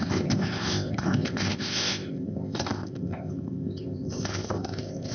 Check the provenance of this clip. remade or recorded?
remade